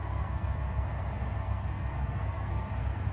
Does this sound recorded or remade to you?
remade